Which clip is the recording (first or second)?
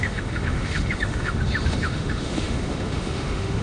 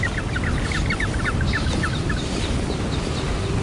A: second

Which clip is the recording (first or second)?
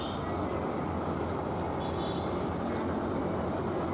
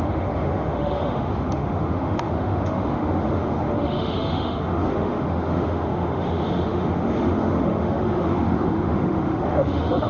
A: first